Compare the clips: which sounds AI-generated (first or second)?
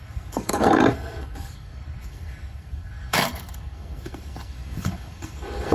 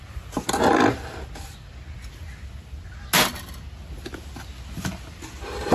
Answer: first